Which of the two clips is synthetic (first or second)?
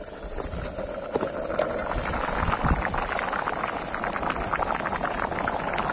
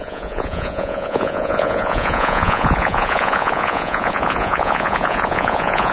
second